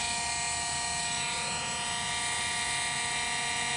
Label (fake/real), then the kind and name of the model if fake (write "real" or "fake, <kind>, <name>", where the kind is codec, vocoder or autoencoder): real